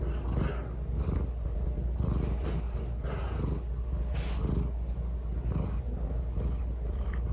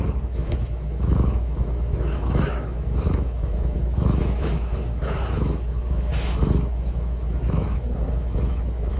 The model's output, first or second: second